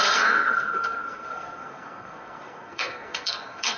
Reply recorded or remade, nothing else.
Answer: remade